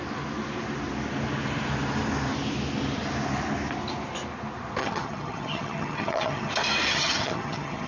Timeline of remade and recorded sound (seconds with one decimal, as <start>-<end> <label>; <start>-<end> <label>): 0.0-4.8 recorded; 4.8-6.5 remade; 6.5-6.9 recorded; 6.9-7.9 remade

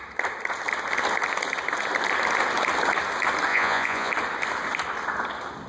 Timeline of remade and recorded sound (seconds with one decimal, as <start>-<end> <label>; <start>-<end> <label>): 0.0-3.5 recorded; 3.5-4.1 remade; 4.1-5.7 recorded